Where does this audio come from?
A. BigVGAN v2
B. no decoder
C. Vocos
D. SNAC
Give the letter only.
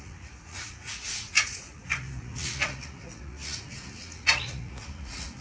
C